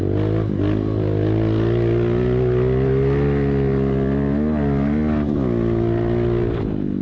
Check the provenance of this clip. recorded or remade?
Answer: recorded